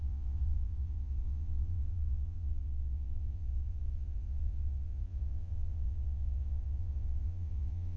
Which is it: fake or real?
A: fake